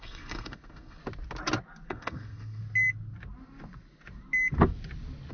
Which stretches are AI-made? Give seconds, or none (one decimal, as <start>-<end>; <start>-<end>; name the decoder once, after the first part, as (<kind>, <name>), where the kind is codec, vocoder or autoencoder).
0.0-1.0 (codec, SNAC); 1.9-2.6